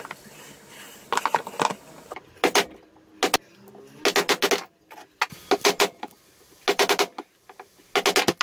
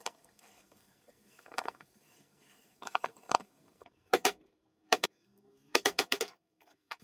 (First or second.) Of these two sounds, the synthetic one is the second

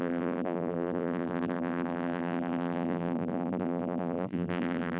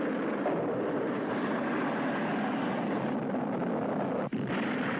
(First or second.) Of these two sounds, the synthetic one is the first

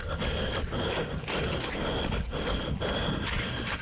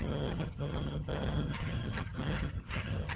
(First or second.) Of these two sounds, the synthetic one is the second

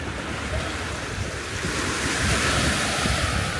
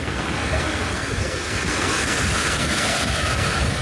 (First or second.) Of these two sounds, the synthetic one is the second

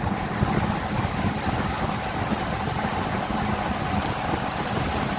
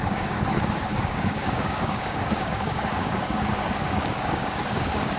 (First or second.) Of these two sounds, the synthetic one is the second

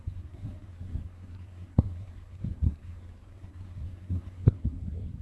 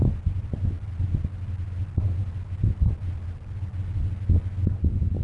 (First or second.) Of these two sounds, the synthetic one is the first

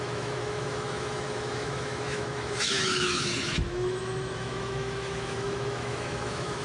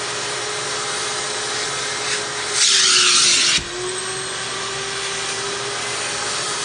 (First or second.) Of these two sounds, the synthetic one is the first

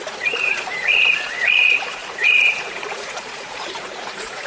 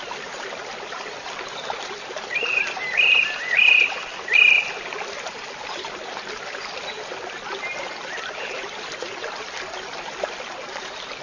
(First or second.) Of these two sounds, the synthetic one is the first